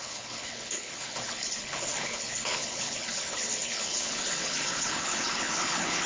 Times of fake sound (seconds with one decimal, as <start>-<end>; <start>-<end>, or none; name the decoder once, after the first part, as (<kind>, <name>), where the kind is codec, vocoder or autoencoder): 0.0-6.1 (codec, HILCodec)